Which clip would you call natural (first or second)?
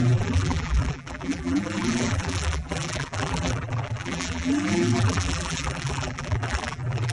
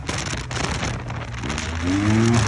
second